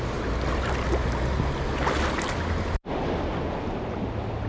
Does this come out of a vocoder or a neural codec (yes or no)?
no